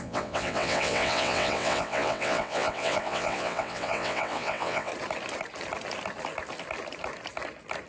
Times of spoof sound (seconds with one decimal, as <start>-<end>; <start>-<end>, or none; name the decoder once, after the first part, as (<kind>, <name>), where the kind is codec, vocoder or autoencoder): 0.0-4.9 (vocoder, WaveNeXt)